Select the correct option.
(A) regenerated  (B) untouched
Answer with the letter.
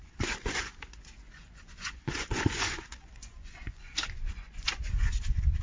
A